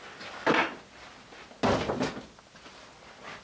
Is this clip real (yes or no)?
yes